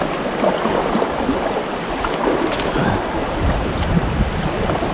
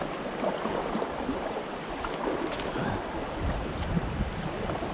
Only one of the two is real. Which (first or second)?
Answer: first